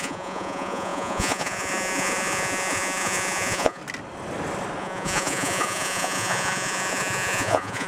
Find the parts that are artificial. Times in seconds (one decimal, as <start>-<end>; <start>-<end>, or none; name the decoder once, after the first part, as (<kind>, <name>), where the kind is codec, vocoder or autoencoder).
0.0-3.8 (vocoder, Vocos); 4.8-7.9